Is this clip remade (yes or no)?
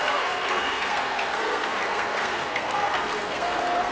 yes